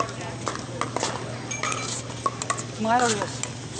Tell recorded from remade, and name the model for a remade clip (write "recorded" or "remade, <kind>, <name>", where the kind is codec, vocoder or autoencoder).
recorded